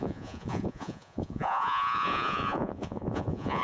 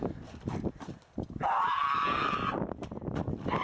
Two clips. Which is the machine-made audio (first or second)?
first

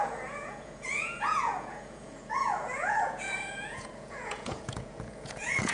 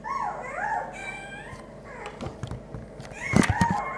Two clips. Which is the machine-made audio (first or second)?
first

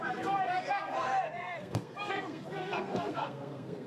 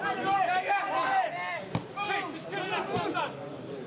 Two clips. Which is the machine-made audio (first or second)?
first